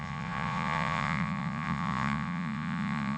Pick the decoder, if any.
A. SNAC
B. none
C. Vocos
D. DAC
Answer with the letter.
C